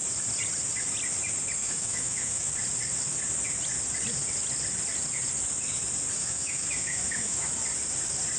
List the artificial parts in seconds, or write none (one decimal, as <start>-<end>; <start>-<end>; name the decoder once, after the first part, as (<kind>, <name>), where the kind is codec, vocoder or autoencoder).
1.6-2.5 (autoencoder, DAC-VAE); 6.2-7.5